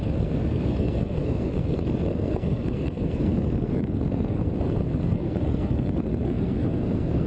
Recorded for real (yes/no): no